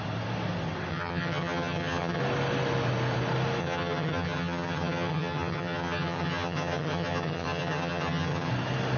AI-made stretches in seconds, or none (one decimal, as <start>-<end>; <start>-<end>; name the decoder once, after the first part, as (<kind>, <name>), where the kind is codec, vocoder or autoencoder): 0.9-2.2 (vocoder, HiFi-GAN); 3.6-8.5